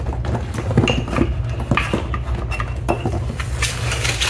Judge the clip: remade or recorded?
recorded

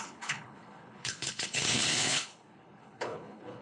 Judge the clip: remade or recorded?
remade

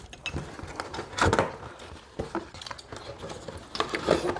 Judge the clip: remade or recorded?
recorded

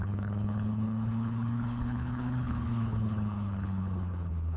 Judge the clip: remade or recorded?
remade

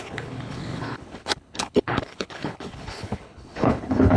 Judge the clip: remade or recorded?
remade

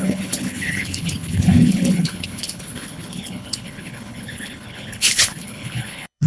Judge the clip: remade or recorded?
remade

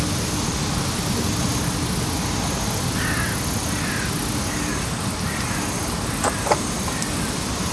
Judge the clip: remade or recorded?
recorded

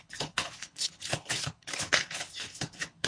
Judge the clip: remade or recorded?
remade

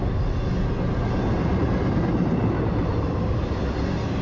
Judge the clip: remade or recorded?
recorded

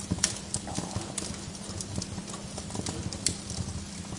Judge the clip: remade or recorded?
recorded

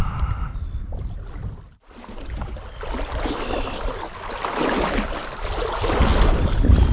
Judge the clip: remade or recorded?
recorded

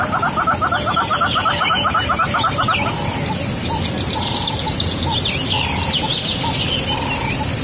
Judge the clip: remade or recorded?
recorded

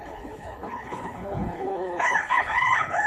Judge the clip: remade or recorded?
remade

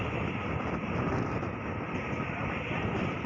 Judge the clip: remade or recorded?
recorded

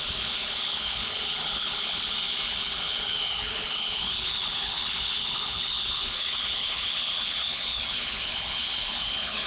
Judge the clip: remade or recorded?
remade